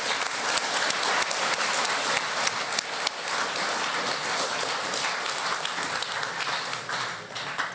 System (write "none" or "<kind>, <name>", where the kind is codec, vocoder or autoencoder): none